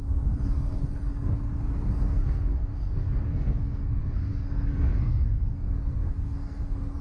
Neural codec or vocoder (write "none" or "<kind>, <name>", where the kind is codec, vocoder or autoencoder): codec, SNAC